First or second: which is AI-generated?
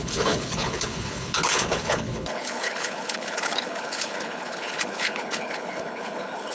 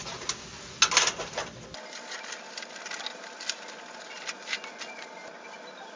first